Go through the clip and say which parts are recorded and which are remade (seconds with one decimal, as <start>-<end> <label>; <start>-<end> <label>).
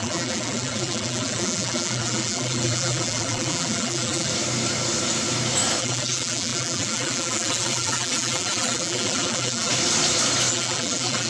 0.0-4.3 remade; 4.3-5.8 recorded; 5.8-9.7 remade; 9.7-10.5 recorded; 10.5-11.3 remade